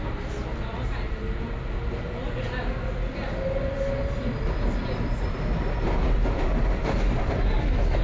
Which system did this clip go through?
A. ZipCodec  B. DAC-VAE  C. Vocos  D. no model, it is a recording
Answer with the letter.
D